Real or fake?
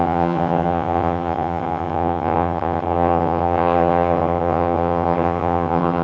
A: fake